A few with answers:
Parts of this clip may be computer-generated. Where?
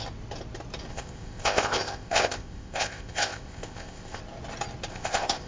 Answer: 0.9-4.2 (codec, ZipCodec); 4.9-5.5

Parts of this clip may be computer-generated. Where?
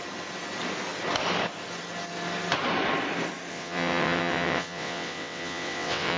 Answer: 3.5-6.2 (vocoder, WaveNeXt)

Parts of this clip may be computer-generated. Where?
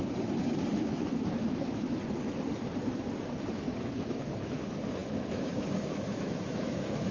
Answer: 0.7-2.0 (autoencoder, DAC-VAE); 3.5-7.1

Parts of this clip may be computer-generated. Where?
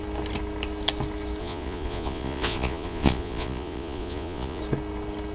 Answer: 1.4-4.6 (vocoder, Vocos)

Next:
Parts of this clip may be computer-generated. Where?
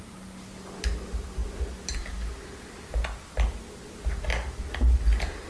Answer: none